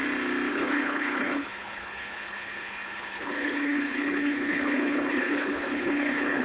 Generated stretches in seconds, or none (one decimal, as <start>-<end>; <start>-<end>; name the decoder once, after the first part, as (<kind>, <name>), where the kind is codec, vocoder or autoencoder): 0.5-6.4 (codec, HILCodec)